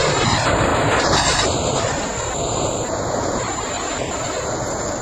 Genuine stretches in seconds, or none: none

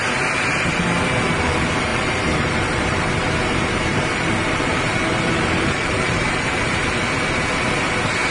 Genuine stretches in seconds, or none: 0.0-1.9; 3.1-3.9; 6.9-8.3

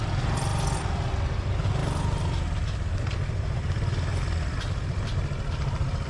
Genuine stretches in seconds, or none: 0.0-6.1

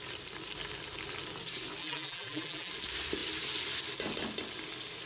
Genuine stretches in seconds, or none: 0.0-1.8; 2.7-5.1

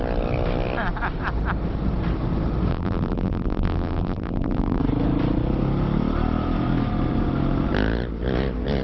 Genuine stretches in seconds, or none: 0.0-2.7; 4.8-8.8